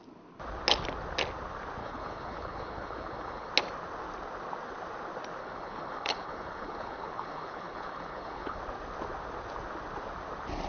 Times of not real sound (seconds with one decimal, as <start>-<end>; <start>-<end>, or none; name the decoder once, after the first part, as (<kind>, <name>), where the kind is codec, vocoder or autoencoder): 1.8-3.5 (codec, HILCodec); 5.4-8.6